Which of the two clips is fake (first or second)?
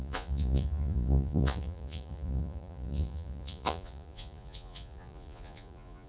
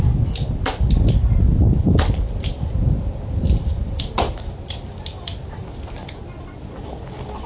first